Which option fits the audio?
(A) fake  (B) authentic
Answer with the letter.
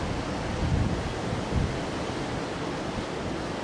B